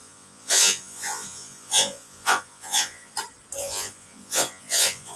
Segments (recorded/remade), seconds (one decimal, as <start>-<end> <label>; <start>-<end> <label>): 0.0-3.1 remade; 3.1-3.6 recorded; 3.6-5.2 remade

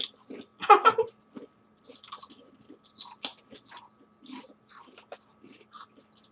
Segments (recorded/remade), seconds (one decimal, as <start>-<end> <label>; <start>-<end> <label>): 0.0-6.3 recorded

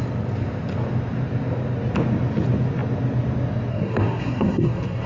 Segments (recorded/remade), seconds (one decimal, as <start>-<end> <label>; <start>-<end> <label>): 0.0-3.7 recorded; 3.7-5.1 remade

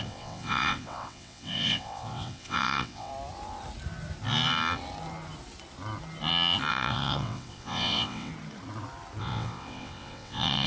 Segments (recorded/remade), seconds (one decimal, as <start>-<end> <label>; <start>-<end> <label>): 0.0-3.1 remade; 3.1-6.7 recorded; 6.7-8.3 remade; 8.3-9.2 recorded; 9.2-10.7 remade

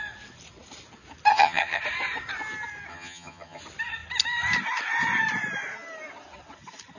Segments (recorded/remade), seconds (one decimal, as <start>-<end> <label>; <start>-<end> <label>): 0.0-1.3 recorded; 1.3-1.8 remade; 1.8-2.9 recorded; 2.9-3.6 remade; 3.6-7.0 recorded